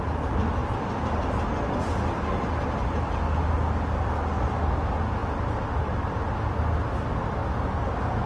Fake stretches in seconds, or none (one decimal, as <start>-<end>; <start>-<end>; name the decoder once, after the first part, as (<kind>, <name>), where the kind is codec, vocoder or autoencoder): none